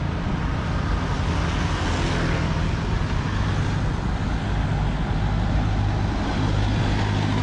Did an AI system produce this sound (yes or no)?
no